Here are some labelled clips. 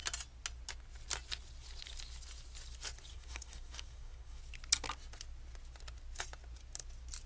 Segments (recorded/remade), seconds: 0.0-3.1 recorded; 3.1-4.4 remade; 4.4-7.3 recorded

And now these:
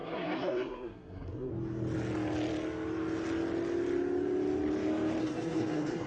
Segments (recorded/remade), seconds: 0.0-1.5 remade; 1.5-5.2 recorded; 5.2-6.1 remade

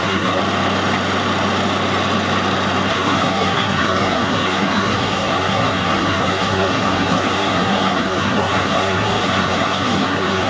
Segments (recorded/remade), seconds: 0.0-0.4 remade; 0.4-2.9 recorded; 2.9-10.5 remade

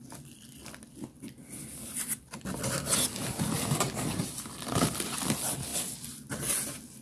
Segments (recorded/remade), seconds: 0.0-7.0 recorded